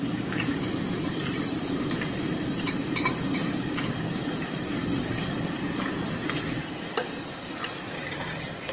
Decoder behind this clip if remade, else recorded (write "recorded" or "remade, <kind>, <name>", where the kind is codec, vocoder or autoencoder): remade, vocoder, BigVGAN v2